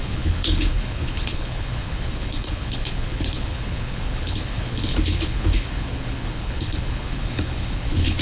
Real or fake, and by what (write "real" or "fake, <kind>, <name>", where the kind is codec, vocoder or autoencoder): fake, codec, HILCodec